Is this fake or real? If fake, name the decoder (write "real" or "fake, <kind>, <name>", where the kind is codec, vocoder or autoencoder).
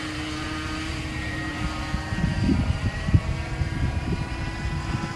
fake, vocoder, BigVGAN v2